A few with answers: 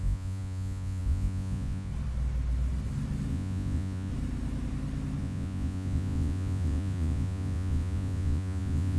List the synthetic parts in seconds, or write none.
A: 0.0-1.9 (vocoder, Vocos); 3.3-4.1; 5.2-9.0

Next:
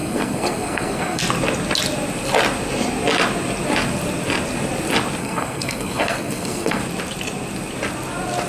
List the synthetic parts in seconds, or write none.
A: 0.0-1.2 (codec, SNAC); 5.2-6.8

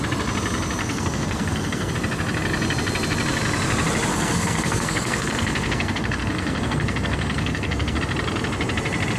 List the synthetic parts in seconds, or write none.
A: 0.8-1.9 (codec, SNAC); 4.1-8.0

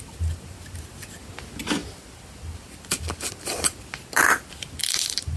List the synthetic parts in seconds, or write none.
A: none